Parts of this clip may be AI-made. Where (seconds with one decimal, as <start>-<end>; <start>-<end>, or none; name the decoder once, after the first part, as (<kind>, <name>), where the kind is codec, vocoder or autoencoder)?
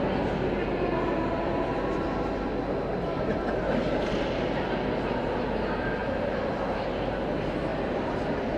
none